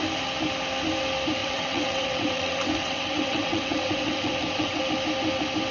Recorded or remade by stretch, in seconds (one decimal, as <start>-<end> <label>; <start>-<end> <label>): 0.0-1.4 recorded; 1.4-4.8 remade; 4.8-5.7 recorded